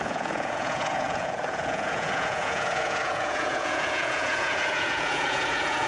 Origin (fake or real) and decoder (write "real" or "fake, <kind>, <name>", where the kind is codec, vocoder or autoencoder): fake, vocoder, Vocos